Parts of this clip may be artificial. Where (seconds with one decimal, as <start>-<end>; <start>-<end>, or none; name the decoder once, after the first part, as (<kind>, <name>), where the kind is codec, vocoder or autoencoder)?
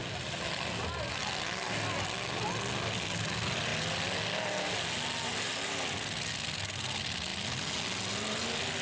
none